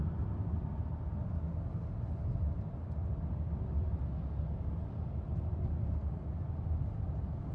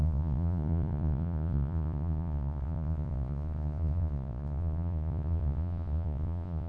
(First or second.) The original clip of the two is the first